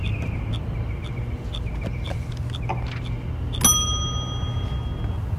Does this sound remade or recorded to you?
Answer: recorded